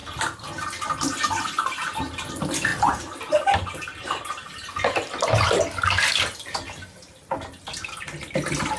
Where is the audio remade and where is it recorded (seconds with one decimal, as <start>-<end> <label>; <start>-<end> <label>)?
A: 0.0-8.8 recorded